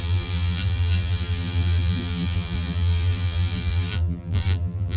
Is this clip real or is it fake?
fake